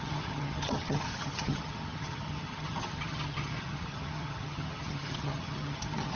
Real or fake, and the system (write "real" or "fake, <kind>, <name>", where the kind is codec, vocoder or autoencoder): fake, vocoder, HiFi-GAN